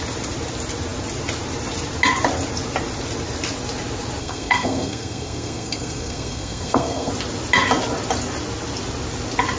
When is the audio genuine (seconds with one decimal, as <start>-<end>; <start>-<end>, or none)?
0.0-4.2; 7.1-9.6